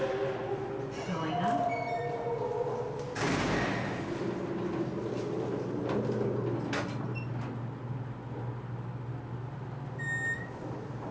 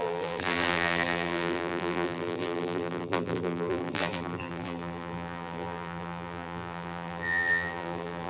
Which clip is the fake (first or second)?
second